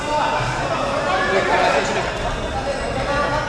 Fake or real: real